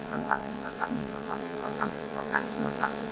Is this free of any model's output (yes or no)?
no